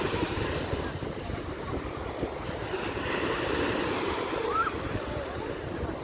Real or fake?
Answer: fake